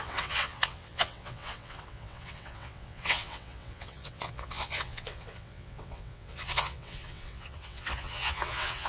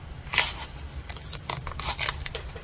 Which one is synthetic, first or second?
first